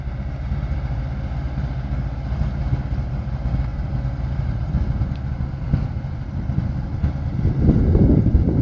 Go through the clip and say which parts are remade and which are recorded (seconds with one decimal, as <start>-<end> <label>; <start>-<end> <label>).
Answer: 0.0-8.6 recorded